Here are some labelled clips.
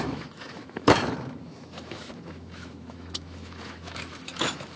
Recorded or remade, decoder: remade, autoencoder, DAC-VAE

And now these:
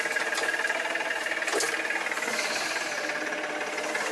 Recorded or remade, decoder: recorded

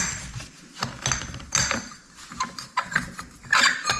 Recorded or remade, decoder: recorded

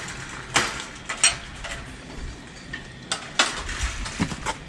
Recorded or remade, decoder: recorded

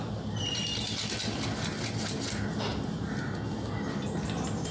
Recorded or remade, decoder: recorded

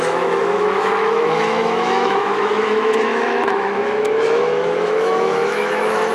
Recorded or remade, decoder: remade, autoencoder, DAC-VAE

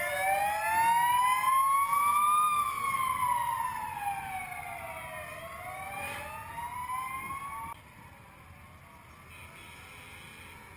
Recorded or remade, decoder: recorded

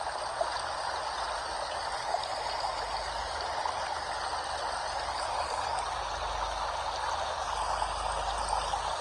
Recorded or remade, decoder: recorded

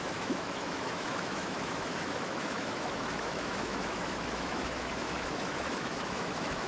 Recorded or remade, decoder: remade, autoencoder, DAC-VAE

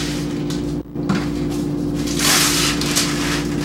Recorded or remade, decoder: recorded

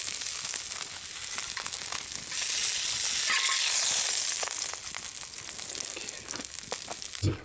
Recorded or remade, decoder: recorded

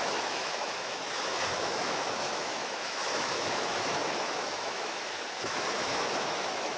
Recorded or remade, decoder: remade, autoencoder, DAC-VAE